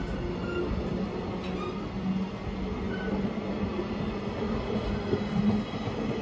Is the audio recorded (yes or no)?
yes